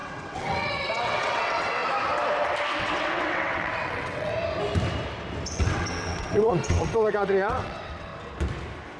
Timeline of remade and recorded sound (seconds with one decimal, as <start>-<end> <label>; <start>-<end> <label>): 0.0-1.8 remade; 1.8-2.8 recorded; 2.8-4.3 remade; 4.3-5.5 recorded; 5.5-8.1 remade; 8.1-9.0 recorded